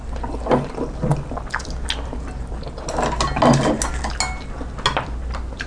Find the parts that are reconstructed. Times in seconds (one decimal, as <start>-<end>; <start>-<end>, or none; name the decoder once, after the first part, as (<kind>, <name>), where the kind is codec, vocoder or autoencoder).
none

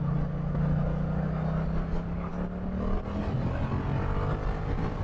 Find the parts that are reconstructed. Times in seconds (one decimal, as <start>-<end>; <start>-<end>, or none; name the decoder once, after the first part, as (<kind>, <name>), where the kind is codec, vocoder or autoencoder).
none

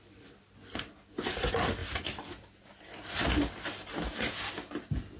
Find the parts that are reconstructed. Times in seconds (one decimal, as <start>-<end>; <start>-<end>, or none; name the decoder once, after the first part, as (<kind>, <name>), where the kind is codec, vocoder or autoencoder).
none

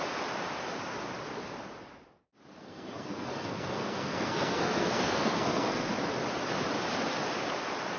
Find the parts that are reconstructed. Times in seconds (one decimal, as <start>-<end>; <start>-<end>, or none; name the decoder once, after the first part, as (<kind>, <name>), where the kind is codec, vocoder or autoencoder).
2.6-5.9 (codec, SNAC)

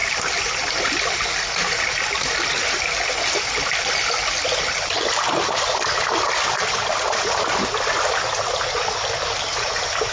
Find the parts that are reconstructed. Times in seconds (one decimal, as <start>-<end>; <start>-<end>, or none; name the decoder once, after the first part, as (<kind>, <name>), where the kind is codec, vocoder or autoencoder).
none

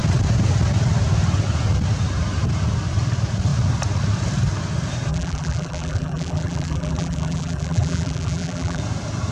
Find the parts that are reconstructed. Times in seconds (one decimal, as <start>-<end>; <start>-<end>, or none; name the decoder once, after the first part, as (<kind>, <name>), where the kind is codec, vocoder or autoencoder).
5.1-8.8 (vocoder, BigVGAN v2)